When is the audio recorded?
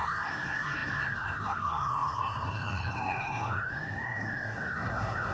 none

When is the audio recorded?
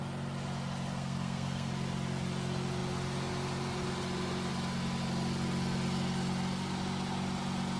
0.0-0.9; 1.7-7.8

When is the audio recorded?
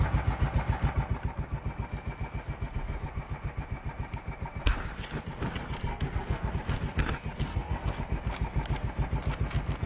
0.0-5.9; 6.5-7.5; 8.0-9.9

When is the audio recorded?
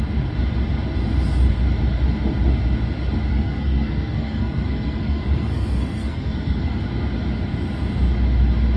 0.0-3.3; 6.8-8.8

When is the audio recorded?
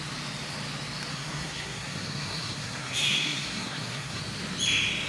0.0-1.1; 4.2-5.1